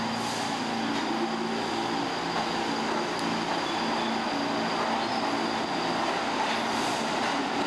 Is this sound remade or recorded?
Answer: recorded